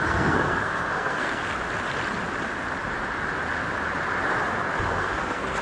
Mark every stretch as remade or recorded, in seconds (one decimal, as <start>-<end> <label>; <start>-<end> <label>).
0.0-1.4 remade; 1.4-4.8 recorded; 4.8-5.6 remade